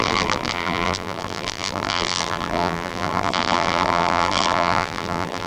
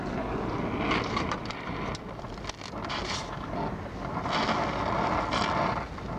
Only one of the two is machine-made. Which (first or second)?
first